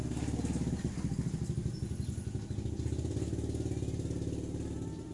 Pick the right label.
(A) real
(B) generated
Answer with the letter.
A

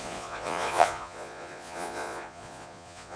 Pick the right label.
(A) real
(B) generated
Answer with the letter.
B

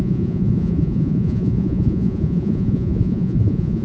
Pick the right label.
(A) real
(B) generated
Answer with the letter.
B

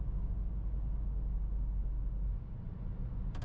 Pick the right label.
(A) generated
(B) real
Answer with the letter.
B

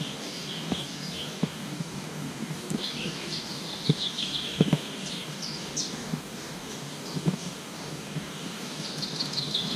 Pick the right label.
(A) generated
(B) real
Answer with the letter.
A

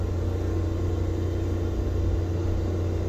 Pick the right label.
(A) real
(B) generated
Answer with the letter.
A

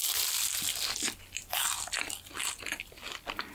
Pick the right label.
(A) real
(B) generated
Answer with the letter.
A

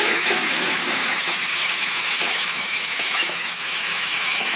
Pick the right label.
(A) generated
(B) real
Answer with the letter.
A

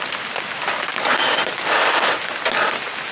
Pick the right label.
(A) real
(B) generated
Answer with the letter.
A